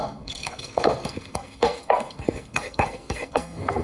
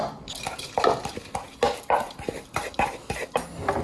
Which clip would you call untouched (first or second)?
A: second